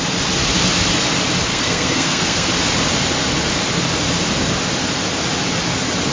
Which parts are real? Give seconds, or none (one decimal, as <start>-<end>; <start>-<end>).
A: 0.0-1.5; 2.5-6.1